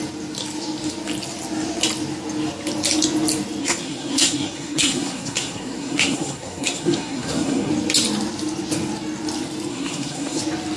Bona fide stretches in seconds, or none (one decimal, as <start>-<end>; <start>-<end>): 0.0-3.6; 7.7-9.7; 10.4-10.8